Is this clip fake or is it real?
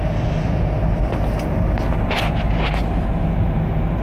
real